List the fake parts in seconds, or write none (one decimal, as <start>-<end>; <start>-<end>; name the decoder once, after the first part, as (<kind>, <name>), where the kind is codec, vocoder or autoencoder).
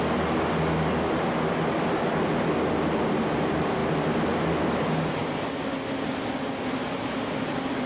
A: none